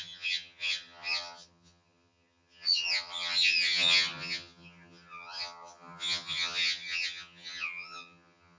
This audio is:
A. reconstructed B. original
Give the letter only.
A